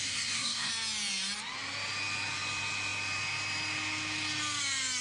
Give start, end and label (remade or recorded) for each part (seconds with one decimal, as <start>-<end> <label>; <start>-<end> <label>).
0.0-0.7 remade; 0.7-5.0 recorded